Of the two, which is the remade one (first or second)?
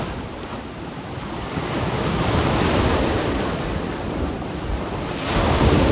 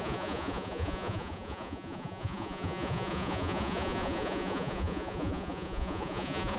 second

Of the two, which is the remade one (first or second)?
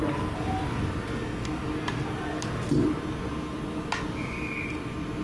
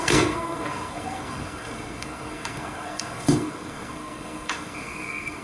second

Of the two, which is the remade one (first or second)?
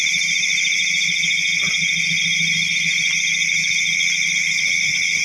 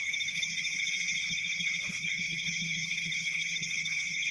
second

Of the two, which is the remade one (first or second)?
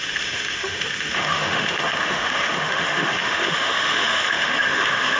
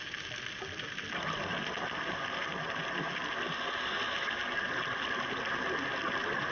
first